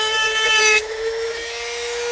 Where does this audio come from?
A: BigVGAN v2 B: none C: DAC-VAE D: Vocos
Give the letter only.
C